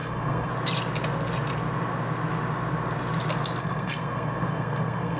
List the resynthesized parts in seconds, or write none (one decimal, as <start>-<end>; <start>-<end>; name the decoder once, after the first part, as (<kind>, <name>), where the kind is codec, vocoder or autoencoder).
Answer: 0.0-0.5 (codec, SNAC); 3.6-5.2